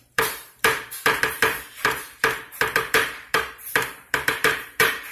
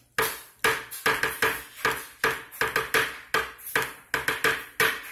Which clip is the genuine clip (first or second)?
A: second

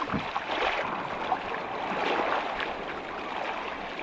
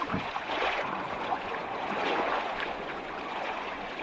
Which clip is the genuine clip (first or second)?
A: first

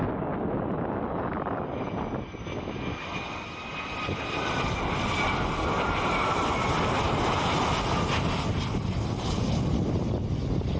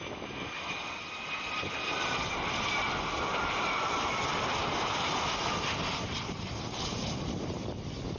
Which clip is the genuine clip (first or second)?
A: first